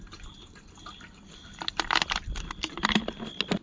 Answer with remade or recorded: recorded